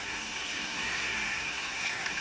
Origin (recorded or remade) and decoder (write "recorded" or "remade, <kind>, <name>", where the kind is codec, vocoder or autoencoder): remade, codec, SNAC